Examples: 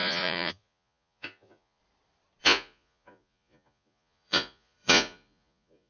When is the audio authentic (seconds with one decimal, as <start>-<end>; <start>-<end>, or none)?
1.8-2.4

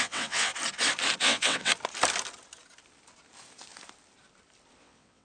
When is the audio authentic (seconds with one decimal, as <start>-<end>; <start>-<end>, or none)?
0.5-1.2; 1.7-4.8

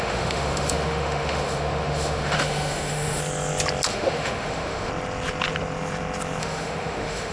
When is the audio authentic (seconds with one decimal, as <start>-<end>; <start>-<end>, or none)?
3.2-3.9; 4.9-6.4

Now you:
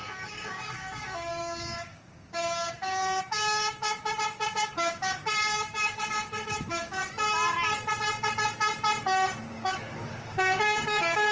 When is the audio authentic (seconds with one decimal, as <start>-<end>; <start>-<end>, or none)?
7.0-9.5

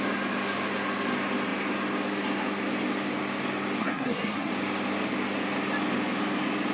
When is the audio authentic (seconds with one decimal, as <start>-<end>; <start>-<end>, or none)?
0.0-3.8; 4.5-6.7

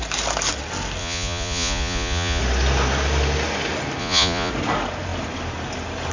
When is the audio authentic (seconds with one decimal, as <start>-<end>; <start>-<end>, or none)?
0.0-1.0; 2.4-4.0; 4.5-6.1

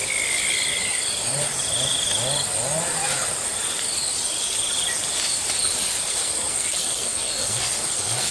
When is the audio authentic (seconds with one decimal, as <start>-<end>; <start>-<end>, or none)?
0.0-6.1